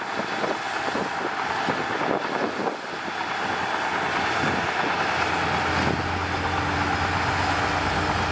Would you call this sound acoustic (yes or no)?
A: yes